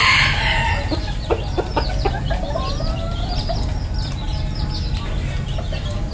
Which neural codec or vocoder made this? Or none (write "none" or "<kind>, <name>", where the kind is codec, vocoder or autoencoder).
none